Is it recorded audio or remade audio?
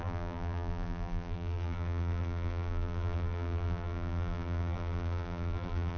remade